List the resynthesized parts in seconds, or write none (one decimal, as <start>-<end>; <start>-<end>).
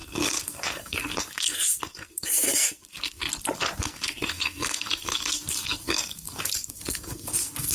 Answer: 0.0-3.2; 3.8-7.7